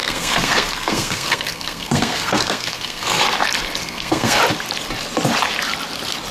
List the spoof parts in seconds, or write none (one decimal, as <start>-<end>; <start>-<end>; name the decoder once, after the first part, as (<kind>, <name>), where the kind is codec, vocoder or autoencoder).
0.0-3.2 (codec, SNAC); 3.8-4.4